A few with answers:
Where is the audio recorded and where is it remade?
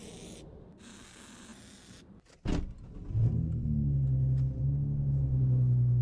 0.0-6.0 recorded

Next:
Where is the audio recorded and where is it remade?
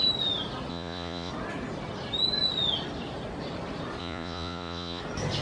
0.0-0.7 recorded; 0.7-1.3 remade; 1.3-4.0 recorded; 4.0-5.0 remade; 5.0-5.4 recorded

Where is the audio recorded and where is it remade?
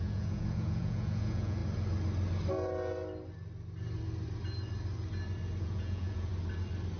0.0-1.6 remade; 1.6-5.6 recorded; 5.6-6.3 remade; 6.3-7.0 recorded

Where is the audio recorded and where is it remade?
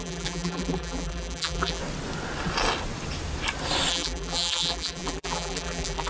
0.0-1.8 remade; 1.8-3.9 recorded; 3.9-6.1 remade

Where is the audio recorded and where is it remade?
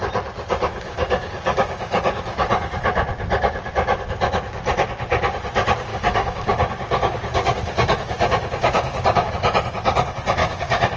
0.0-0.7 recorded; 0.7-2.2 remade; 2.2-5.9 recorded; 5.9-9.3 remade; 9.3-10.4 recorded; 10.4-11.0 remade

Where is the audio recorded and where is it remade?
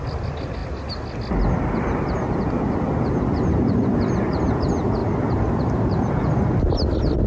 0.0-7.3 recorded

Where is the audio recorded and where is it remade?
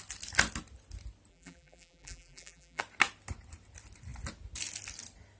0.0-1.3 recorded; 1.3-2.8 remade; 2.8-5.4 recorded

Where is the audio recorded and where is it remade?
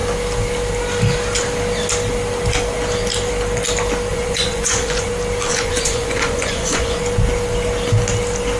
0.0-4.1 recorded; 4.1-5.1 remade; 5.1-5.5 recorded; 5.5-7.0 remade; 7.0-8.6 recorded